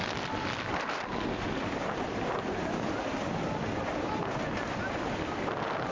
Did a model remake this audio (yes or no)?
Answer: no